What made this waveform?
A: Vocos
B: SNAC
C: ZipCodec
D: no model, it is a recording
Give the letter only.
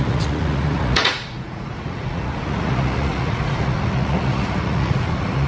A